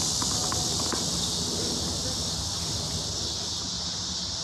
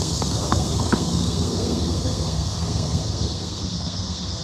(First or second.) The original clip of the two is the first